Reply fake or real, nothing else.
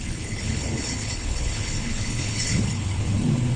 fake